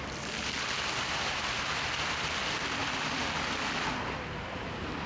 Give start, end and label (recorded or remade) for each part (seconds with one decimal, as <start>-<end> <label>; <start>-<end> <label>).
0.0-5.1 recorded